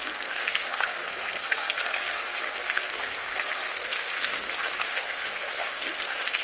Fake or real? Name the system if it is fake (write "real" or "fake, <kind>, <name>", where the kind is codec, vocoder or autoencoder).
fake, codec, SNAC